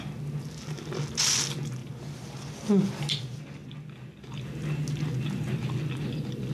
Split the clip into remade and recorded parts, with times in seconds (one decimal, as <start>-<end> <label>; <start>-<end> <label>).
0.0-6.5 recorded